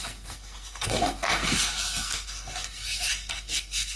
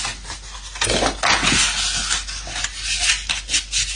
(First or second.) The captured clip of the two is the second